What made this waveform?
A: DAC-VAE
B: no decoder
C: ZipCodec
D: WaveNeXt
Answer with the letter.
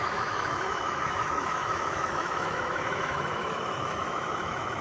A